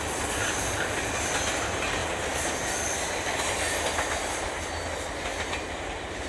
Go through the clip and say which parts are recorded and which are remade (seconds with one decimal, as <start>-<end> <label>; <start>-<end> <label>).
0.0-2.0 recorded; 2.0-2.5 remade; 2.5-5.3 recorded; 5.3-6.3 remade